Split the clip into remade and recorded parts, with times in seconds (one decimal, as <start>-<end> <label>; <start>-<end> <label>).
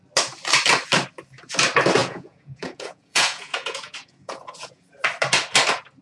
0.0-2.0 recorded; 2.0-4.8 remade; 4.8-6.0 recorded